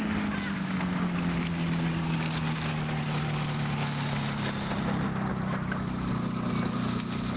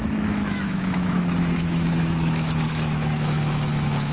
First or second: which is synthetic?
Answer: second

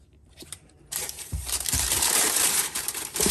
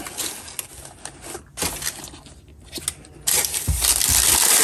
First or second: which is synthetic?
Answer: first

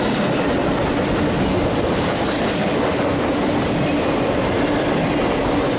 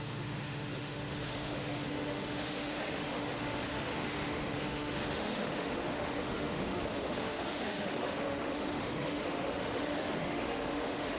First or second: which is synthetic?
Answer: second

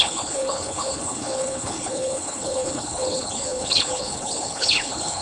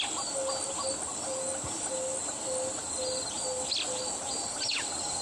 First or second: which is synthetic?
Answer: first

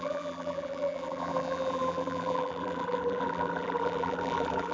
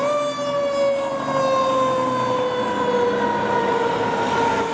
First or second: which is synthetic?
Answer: first